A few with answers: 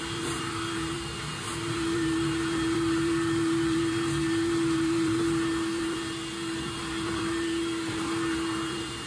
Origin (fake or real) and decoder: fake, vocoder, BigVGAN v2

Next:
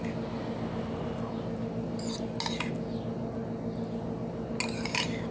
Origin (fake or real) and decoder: real